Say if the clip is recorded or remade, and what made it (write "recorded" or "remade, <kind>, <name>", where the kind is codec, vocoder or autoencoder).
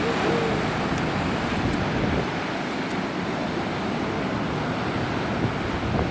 recorded